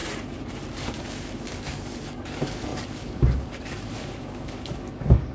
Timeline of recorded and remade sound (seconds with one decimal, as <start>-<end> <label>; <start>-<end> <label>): 0.0-0.7 recorded; 0.7-5.3 remade